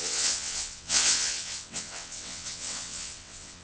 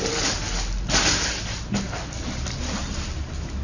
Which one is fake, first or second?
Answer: first